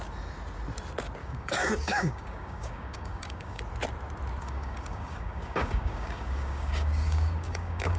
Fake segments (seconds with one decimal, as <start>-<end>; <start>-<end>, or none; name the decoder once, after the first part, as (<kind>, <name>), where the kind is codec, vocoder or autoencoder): 1.2-3.6 (codec, DAC); 4.4-8.0